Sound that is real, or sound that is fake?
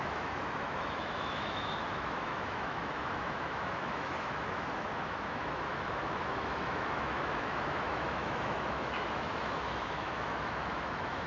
fake